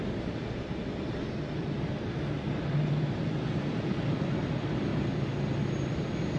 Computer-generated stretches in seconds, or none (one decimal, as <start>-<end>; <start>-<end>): 2.5-6.4